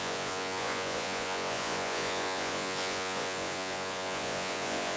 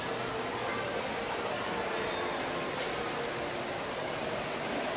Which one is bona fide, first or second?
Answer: second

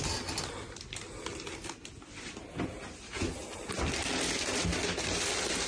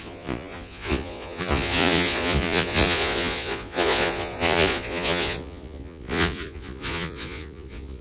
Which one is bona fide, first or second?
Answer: first